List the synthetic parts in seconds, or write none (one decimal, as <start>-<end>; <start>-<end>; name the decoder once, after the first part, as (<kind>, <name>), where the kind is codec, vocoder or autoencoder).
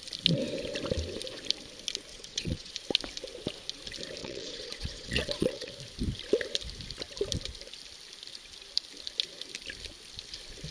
2.1-2.7 (vocoder, Vocos); 4.2-5.7